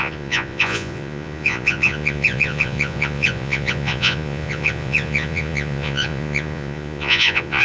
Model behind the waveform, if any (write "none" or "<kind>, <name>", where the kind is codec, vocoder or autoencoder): vocoder, Vocos